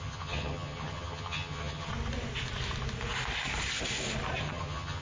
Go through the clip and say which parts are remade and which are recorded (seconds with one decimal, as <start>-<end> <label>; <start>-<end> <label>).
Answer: 0.0-1.9 remade; 1.9-4.4 recorded; 4.4-5.0 remade